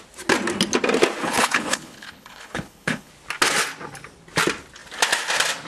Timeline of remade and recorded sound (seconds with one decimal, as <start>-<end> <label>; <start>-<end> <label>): 0.0-1.2 recorded; 1.2-3.1 remade; 3.1-5.7 recorded